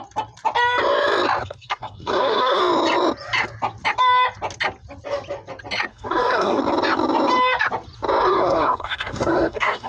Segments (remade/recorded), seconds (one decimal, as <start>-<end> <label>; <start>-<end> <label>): 0.0-1.4 recorded; 1.4-2.6 remade; 2.6-5.9 recorded; 5.9-6.6 remade; 6.6-8.2 recorded; 8.2-9.9 remade